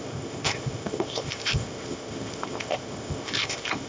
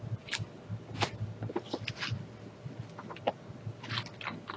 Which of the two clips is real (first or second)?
second